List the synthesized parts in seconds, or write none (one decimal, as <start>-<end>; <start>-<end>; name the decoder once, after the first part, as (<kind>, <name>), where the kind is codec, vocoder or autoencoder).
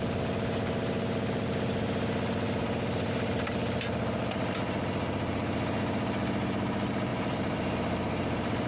7.1-8.7 (vocoder, BigVGAN v2)